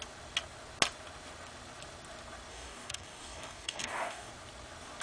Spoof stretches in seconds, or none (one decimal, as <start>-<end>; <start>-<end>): 2.5-4.3